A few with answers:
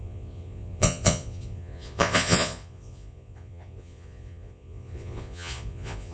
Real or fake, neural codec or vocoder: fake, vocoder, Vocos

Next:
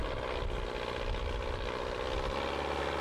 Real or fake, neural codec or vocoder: real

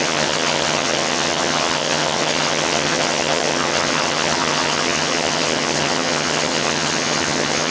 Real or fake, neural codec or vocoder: fake, vocoder, HiFi-GAN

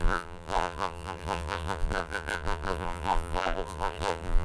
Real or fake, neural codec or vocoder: fake, vocoder, BigVGAN v2